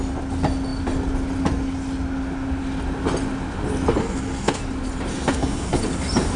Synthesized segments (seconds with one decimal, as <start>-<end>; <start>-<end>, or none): 4.0-4.6; 5.1-5.8